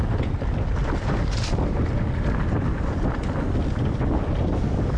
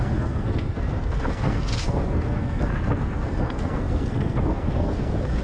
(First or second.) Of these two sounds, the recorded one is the first